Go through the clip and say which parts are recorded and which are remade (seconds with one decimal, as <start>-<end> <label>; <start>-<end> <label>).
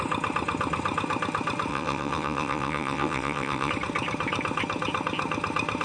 0.0-1.7 recorded; 1.7-3.7 remade; 3.7-5.8 recorded